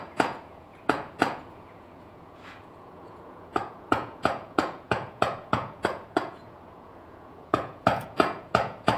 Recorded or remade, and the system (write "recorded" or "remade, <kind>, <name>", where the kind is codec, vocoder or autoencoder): remade, vocoder, Vocos